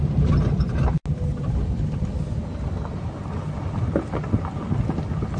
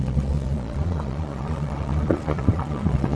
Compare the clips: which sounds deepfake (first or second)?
second